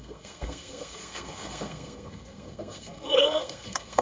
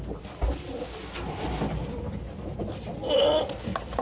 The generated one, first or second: first